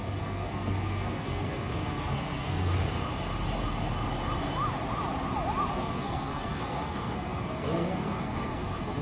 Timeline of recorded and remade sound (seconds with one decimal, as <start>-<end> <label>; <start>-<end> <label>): 0.0-2.7 remade; 2.7-5.7 recorded; 5.7-9.0 remade